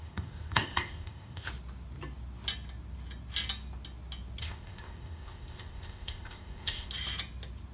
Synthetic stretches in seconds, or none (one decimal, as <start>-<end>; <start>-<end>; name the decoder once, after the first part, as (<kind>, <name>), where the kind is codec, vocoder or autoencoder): 0.0-1.5 (codec, ZipCodec); 4.4-6.9